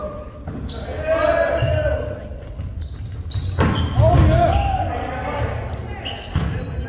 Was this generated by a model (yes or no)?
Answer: no